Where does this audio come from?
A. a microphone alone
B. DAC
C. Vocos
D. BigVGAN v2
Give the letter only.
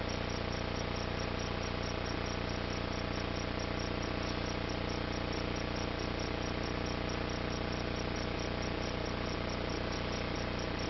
A